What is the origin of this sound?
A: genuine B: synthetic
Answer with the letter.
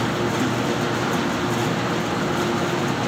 A